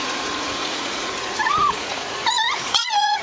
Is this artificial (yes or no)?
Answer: yes